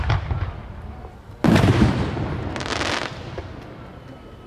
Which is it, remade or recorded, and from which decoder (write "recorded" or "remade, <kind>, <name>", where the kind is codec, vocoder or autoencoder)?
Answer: recorded